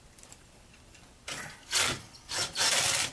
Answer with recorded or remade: remade